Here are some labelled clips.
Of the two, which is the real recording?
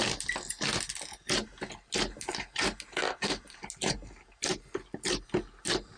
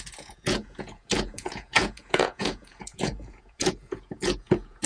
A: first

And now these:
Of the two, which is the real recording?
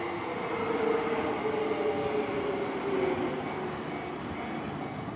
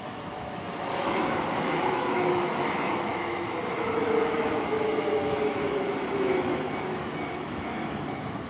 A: first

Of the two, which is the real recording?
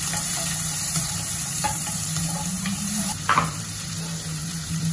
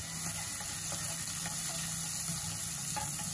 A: second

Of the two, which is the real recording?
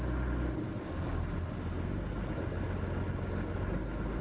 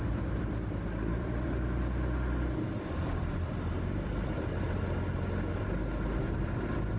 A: first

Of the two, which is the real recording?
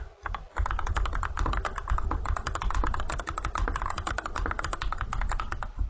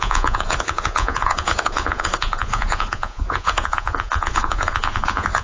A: first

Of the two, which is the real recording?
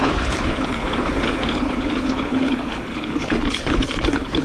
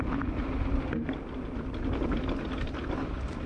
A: second